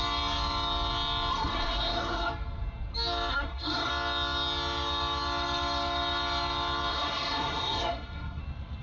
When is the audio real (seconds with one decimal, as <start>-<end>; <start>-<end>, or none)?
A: 0.0-1.3; 2.3-3.3; 3.9-6.9; 8.4-8.8